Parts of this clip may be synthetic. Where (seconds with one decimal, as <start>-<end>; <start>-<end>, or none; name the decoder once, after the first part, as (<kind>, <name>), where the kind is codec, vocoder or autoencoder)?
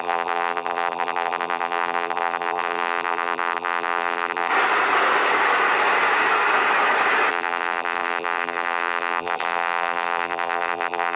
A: 0.0-4.5 (vocoder, BigVGAN v2); 7.3-11.2